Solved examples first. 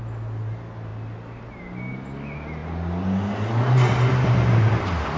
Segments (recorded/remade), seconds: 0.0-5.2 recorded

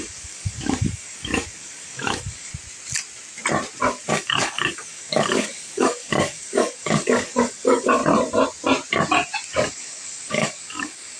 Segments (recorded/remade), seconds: 0.0-2.5 remade; 2.5-4.1 recorded; 4.1-8.0 remade; 8.0-9.7 recorded; 9.7-11.2 remade

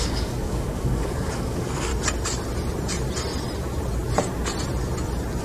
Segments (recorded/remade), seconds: 0.0-1.9 remade; 1.9-5.4 recorded

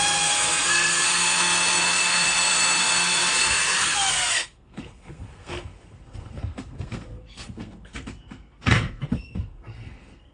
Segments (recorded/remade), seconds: 0.0-10.3 remade

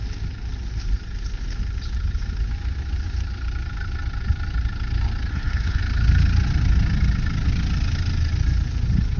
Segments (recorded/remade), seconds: 0.0-5.3 recorded; 5.3-5.8 remade; 5.8-9.2 recorded

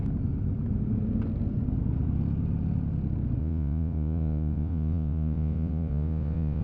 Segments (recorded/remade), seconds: 0.0-3.4 recorded; 3.4-6.6 remade

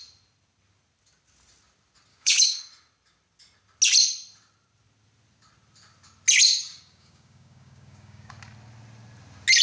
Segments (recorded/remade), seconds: 0.0-2.1 recorded; 2.1-2.6 remade; 2.6-6.5 recorded; 6.5-8.3 remade; 8.3-9.6 recorded

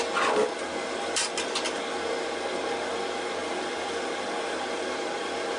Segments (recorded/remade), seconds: 0.0-3.4 recorded; 3.4-4.9 remade; 4.9-5.6 recorded